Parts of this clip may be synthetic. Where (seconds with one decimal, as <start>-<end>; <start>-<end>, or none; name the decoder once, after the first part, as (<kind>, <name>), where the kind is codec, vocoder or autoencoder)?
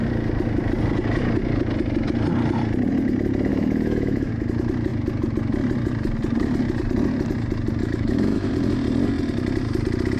3.5-4.3 (autoencoder, DAC-VAE); 7.8-8.5